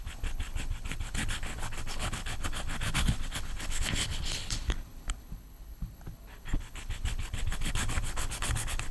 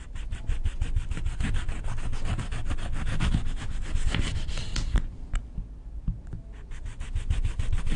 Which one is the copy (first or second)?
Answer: first